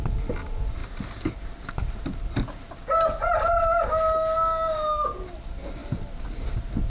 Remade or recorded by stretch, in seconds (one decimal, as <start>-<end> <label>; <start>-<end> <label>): 0.0-0.8 recorded; 0.8-1.3 remade; 1.3-5.8 recorded; 5.8-6.9 remade

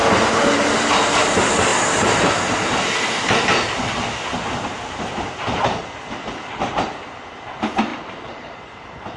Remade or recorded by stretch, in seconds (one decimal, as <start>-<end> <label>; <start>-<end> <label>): 0.0-1.7 recorded; 1.7-2.3 remade; 2.3-7.9 recorded; 7.9-9.2 remade

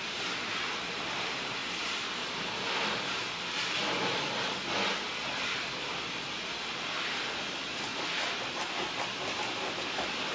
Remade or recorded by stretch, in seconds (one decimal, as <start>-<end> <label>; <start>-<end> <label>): 0.0-7.9 remade; 7.9-8.4 recorded; 8.4-10.3 remade

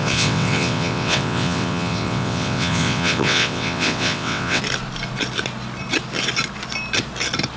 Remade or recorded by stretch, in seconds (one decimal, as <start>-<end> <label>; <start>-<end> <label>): 0.0-4.6 remade; 4.6-7.6 recorded

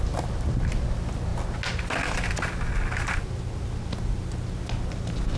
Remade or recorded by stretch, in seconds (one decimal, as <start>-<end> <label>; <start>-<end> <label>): 0.0-5.4 recorded

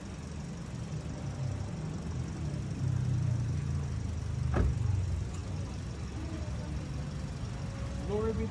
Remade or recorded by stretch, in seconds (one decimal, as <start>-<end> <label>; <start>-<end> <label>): 0.0-8.5 recorded